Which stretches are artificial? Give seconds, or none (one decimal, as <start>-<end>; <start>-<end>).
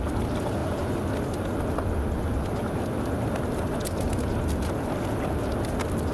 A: none